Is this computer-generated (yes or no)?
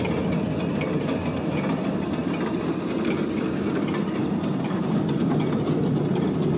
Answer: no